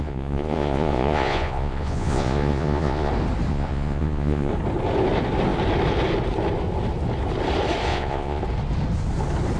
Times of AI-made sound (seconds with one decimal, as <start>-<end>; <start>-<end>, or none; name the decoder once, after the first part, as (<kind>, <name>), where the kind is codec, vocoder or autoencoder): 0.0-3.1 (vocoder, Vocos); 3.5-4.5; 7.9-8.4